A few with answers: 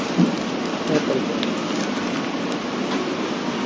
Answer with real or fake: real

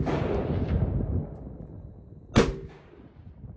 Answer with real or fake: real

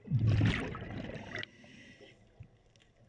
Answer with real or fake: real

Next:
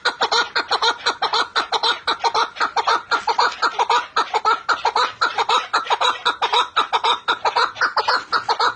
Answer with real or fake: real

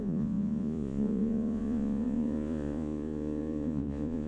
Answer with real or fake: fake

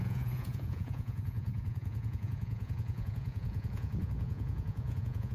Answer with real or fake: fake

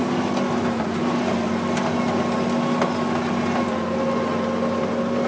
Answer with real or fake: real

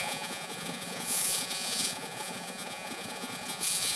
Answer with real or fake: fake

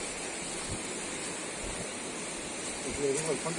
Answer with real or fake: real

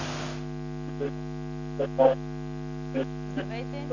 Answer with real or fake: real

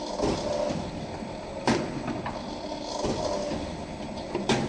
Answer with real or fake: real